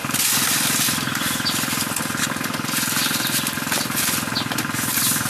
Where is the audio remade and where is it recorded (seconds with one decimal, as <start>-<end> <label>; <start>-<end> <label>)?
0.0-5.3 recorded